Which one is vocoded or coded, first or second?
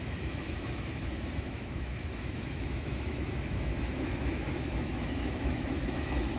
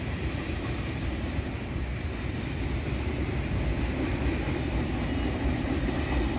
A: first